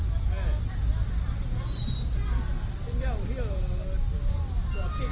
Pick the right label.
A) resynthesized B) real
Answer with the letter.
B